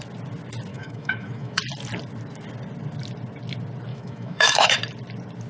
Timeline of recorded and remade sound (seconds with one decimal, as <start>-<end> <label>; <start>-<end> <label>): 0.0-0.7 recorded; 0.7-1.6 remade; 1.6-3.9 recorded; 3.9-4.8 remade; 4.8-5.5 recorded